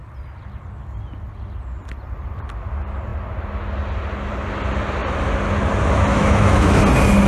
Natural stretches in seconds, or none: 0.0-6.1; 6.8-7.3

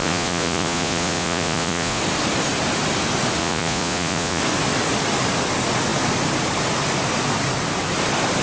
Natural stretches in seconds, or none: 2.0-3.4; 4.4-8.4

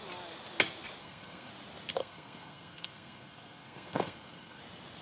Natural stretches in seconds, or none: 0.0-1.0; 1.5-2.0; 4.6-5.0

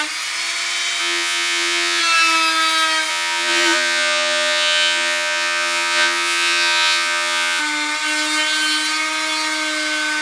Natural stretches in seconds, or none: 0.0-1.0; 2.0-3.1; 7.6-10.2

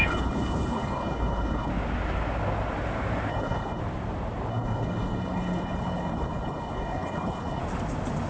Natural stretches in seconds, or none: 1.7-3.3; 3.8-4.5; 7.6-8.3

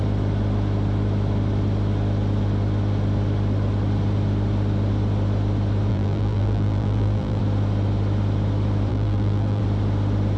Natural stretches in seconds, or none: 0.0-5.9; 7.4-8.9; 9.6-10.4

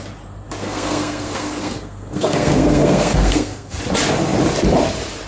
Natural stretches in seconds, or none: 0.0-0.6; 3.8-5.3